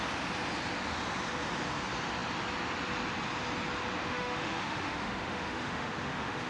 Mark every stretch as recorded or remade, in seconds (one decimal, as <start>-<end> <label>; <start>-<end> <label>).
0.0-4.0 recorded; 4.0-6.5 remade